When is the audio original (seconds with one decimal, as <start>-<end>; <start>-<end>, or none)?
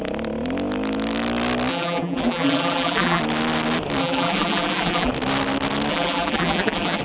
0.0-1.7; 3.2-4.0; 5.1-5.9